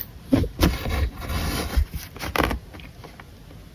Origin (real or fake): real